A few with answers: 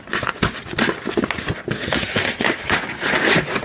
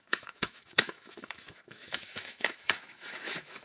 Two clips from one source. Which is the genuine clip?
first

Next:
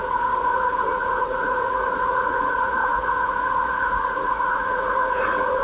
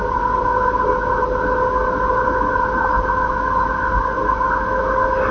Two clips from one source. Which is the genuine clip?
second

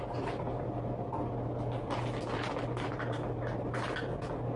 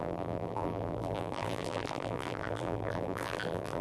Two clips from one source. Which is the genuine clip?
first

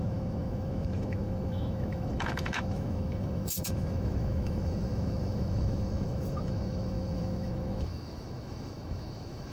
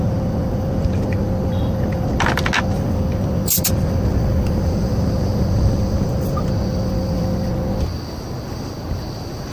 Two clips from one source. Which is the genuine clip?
second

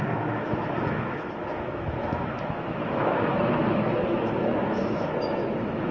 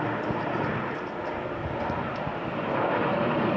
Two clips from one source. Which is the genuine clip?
second